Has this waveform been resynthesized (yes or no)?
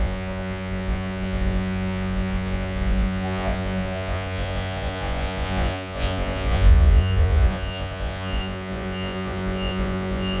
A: yes